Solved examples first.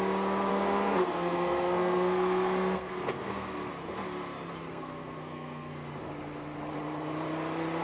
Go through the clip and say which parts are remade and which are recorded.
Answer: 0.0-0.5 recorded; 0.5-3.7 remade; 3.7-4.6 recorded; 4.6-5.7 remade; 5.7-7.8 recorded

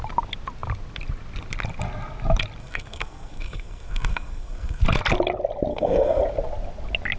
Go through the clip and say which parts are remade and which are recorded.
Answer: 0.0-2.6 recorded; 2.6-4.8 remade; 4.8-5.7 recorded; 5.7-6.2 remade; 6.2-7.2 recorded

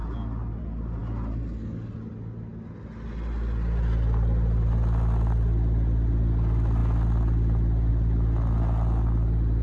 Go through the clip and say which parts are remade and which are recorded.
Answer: 0.0-9.6 recorded

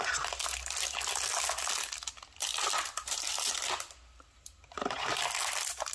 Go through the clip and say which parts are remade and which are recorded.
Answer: 0.0-5.9 recorded